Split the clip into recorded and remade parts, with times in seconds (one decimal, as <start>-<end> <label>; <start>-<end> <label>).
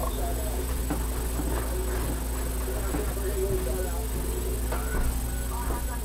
0.0-0.8 remade; 0.8-6.0 recorded